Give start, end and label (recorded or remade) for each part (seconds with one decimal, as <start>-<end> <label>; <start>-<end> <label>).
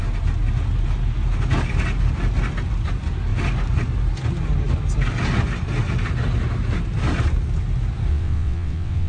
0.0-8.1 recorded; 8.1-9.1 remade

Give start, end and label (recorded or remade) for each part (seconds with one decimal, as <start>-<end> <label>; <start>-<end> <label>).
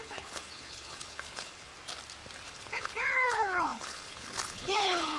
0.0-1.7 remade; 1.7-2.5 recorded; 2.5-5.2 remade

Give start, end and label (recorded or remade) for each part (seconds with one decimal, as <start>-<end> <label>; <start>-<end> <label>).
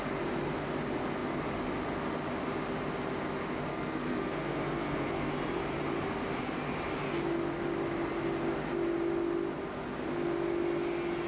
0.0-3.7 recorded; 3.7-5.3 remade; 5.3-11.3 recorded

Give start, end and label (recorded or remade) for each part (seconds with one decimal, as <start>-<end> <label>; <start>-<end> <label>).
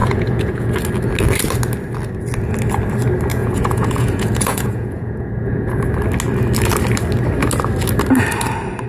0.0-0.7 remade; 0.7-3.3 recorded; 3.3-5.8 remade; 5.8-8.9 recorded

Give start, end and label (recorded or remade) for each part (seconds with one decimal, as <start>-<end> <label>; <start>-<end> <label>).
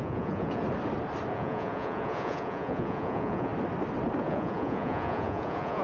0.0-0.6 remade; 0.6-1.3 recorded; 1.3-3.5 remade; 3.5-4.2 recorded; 4.2-5.8 remade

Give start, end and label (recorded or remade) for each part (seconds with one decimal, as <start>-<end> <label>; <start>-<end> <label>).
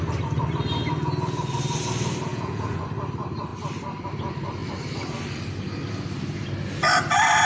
0.0-2.3 recorded; 2.3-2.8 remade; 2.8-7.4 recorded